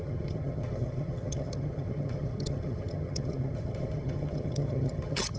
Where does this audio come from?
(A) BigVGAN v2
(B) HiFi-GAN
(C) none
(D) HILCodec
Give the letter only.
B